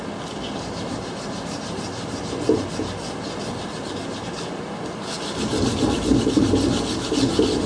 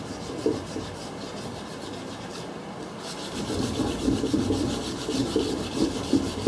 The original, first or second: first